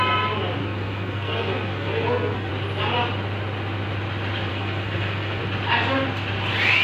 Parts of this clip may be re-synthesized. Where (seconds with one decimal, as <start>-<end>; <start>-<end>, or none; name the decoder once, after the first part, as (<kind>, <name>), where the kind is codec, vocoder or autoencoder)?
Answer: 0.6-2.5 (codec, SNAC); 4.5-5.4